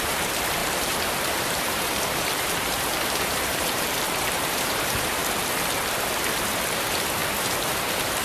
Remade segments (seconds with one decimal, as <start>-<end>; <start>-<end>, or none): 0.0-5.2; 6.4-7.2